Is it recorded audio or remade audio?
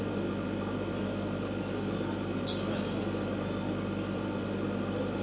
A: recorded